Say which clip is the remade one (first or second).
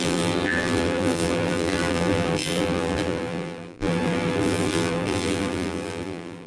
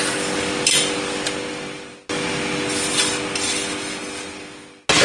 first